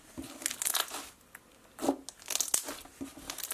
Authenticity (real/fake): real